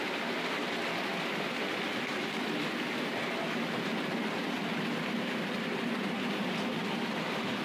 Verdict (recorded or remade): recorded